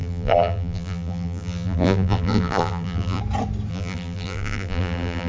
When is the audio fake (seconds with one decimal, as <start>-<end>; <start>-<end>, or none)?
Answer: 0.0-3.2; 3.7-5.3